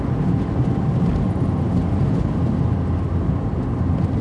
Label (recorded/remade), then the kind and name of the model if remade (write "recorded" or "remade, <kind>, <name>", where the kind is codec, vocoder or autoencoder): recorded